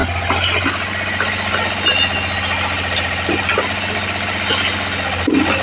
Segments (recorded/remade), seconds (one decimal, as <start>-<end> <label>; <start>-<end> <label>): 0.0-5.6 recorded